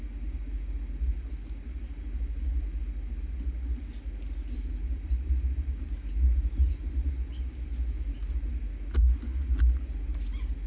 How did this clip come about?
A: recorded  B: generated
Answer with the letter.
A